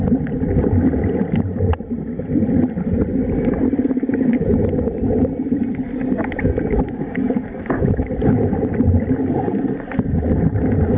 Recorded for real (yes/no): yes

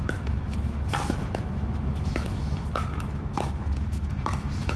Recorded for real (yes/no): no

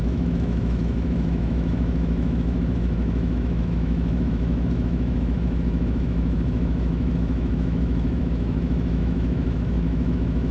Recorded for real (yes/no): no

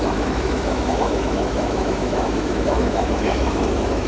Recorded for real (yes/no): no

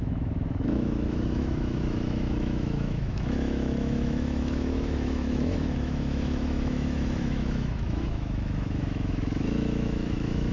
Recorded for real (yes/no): no